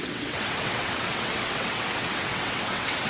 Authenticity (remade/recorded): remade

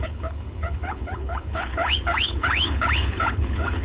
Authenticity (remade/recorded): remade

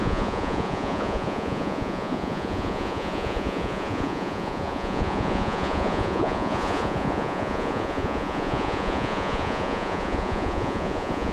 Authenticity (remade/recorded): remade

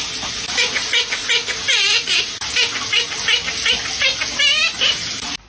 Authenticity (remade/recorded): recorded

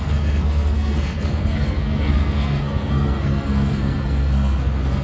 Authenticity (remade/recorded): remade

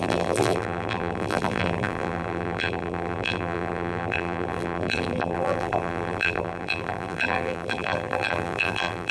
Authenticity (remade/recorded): remade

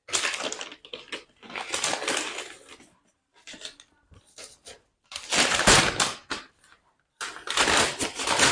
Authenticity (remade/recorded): recorded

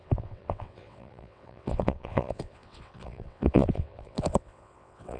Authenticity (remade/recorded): remade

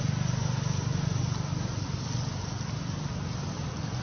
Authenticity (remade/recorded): recorded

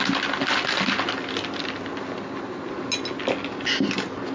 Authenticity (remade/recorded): recorded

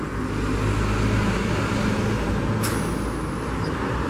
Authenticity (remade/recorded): recorded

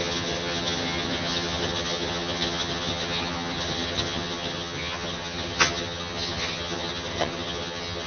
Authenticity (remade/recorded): remade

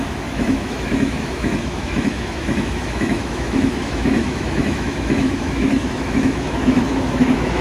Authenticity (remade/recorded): remade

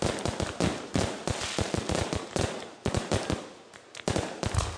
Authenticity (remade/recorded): recorded